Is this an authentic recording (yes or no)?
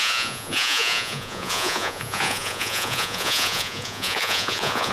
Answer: no